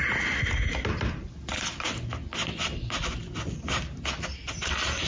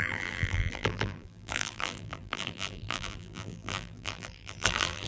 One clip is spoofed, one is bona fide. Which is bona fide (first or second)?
first